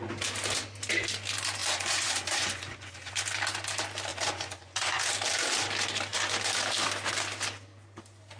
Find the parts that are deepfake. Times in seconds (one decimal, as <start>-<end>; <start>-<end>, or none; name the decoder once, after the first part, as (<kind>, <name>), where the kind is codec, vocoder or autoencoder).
1.6-3.2 (vocoder, Vocos); 4.1-5.0